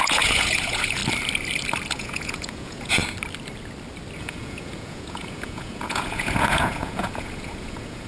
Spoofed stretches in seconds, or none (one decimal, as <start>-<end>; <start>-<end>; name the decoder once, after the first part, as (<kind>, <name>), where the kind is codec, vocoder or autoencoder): 0.0-1.0 (vocoder, Vocos); 1.9-3.0; 4.2-8.1